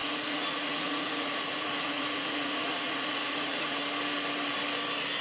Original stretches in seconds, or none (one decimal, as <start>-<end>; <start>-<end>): 3.8-5.2

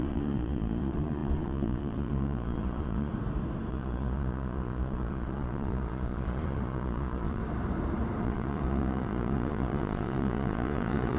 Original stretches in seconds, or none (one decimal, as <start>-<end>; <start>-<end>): 3.1-3.7; 7.4-8.2

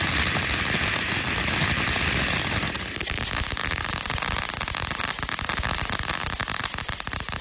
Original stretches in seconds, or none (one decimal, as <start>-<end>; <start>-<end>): 0.0-7.4